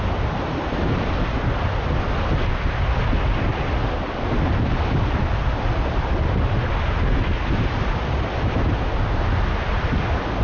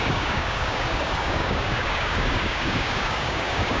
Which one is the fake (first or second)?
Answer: second